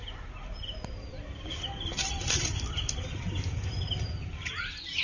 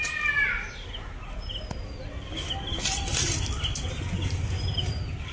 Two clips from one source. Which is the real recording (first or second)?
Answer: second